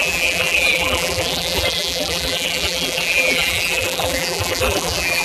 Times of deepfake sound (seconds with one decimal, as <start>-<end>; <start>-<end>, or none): 0.0-5.2